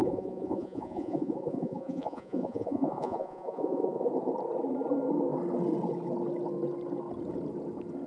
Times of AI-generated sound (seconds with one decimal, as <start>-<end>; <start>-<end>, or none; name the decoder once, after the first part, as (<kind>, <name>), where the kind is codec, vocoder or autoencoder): 0.0-4.1 (vocoder, Vocos)